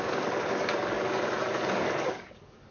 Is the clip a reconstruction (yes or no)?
yes